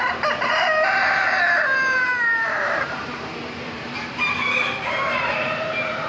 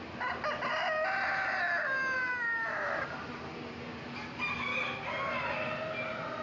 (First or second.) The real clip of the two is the second